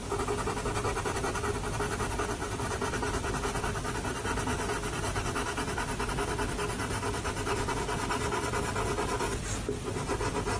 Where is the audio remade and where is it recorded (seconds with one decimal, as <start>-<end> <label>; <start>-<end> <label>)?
0.0-10.6 recorded